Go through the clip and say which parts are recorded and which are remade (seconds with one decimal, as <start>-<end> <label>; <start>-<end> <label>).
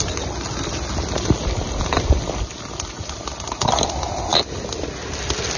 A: 0.0-5.6 recorded